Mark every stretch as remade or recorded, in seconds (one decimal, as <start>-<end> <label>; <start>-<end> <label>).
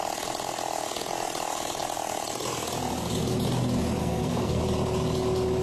0.0-4.0 recorded; 4.0-4.6 remade; 4.6-5.6 recorded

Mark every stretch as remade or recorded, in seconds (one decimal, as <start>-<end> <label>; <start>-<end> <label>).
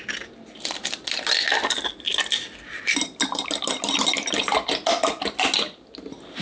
0.0-6.4 recorded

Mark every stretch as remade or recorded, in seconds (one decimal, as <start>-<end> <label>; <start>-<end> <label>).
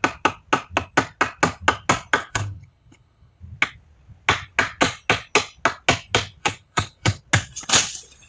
0.0-2.2 recorded; 2.2-3.4 remade; 3.4-6.4 recorded; 6.4-7.2 remade; 7.2-8.3 recorded